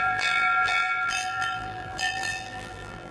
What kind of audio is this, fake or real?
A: fake